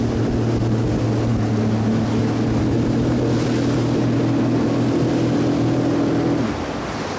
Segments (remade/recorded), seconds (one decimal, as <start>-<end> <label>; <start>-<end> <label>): 0.0-7.2 recorded